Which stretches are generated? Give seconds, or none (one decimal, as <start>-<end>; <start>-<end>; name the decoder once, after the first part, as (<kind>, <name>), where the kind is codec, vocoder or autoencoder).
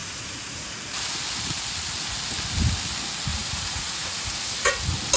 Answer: 0.0-0.7 (vocoder, Vocos); 3.3-4.7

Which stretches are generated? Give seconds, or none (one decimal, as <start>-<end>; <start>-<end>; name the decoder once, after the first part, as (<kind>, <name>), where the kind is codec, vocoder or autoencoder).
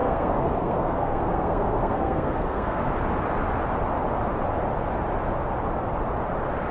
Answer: 0.0-2.9 (codec, SNAC)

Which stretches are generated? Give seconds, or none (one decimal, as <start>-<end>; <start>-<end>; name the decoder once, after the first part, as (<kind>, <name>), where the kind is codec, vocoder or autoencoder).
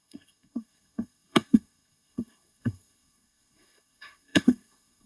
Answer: 0.0-5.1 (codec, SNAC)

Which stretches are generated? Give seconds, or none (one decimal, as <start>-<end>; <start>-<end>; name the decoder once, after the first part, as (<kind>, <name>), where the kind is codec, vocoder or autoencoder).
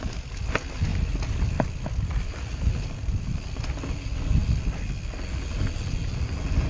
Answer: none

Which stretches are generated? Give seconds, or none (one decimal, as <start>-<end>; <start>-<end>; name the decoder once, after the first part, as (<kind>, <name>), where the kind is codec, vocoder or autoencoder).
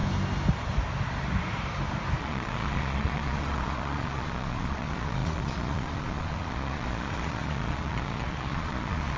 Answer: 2.2-9.2 (vocoder, Vocos)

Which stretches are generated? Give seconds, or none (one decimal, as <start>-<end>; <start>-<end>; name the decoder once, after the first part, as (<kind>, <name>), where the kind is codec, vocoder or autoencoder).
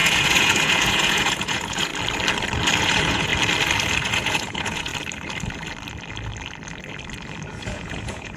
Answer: 0.0-1.9 (vocoder, Vocos); 2.8-3.3; 4.0-4.9; 7.6-8.4